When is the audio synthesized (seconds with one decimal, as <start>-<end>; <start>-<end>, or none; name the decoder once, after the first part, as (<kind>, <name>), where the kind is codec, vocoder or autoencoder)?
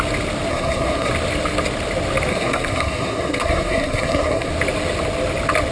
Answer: 0.5-1.1 (codec, SNAC); 2.3-4.5